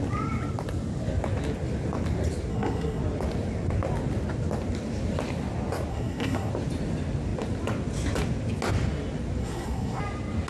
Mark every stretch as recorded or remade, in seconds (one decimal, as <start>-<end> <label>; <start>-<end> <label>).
0.0-2.5 recorded; 2.5-3.0 remade; 3.0-5.9 recorded; 5.9-6.5 remade; 6.5-9.4 recorded; 9.4-10.0 remade; 10.0-10.5 recorded